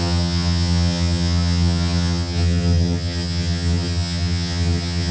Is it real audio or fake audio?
fake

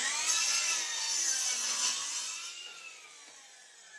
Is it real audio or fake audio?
fake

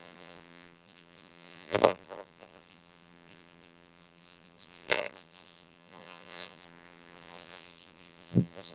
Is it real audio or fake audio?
fake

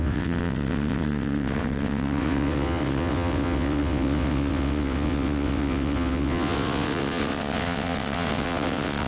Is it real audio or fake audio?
fake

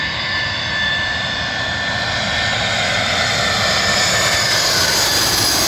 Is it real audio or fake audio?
real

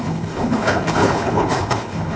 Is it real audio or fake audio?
fake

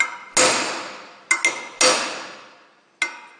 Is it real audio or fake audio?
real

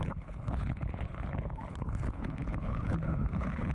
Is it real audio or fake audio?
fake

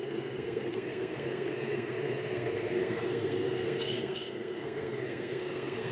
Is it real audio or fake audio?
fake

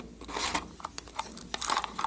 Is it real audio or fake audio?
real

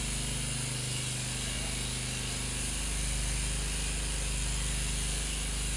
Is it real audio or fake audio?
real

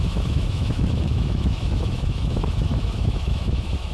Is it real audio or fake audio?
fake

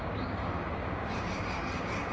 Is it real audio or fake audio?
fake